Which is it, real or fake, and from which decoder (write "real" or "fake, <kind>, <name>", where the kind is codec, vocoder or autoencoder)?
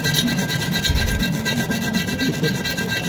real